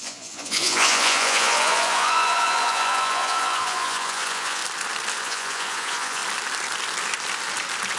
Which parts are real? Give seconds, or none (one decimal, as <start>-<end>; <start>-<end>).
4.6-5.2; 6.2-8.0